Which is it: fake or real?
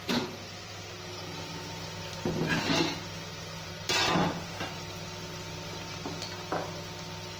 real